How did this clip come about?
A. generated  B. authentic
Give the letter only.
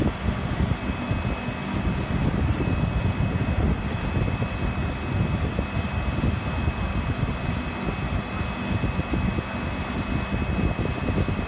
B